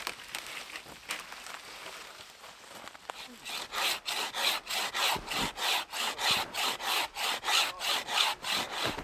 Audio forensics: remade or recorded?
recorded